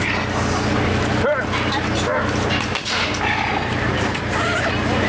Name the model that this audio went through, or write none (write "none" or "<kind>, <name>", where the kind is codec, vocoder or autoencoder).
none